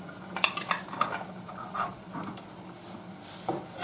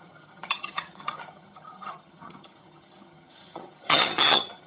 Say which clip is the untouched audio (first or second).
first